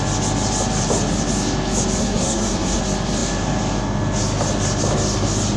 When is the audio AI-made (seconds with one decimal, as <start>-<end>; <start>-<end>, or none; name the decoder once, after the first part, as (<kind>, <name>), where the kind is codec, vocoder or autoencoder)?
2.0-2.8 (codec, SNAC)